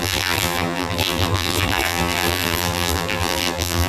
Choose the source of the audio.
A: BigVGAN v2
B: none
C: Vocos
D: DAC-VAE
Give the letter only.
A